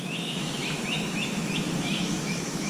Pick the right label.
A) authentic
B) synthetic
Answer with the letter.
B